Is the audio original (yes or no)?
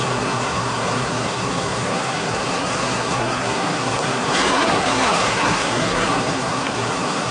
no